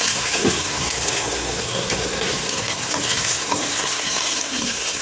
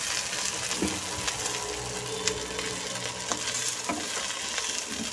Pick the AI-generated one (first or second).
first